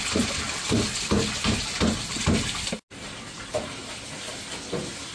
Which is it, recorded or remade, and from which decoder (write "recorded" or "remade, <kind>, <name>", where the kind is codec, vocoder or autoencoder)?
recorded